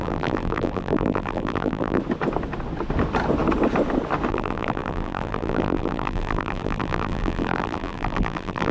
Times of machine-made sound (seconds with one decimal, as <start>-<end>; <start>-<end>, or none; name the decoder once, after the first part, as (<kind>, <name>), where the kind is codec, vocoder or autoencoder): 0.0-2.0 (vocoder, BigVGAN v2); 4.3-8.7